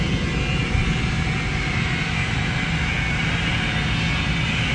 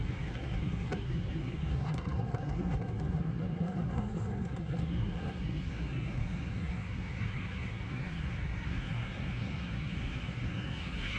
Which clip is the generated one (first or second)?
second